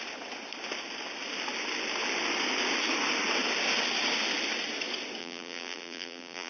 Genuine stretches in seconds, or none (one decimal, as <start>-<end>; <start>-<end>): 0.0-5.2